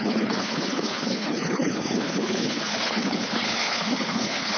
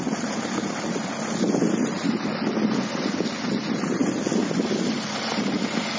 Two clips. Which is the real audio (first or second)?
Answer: second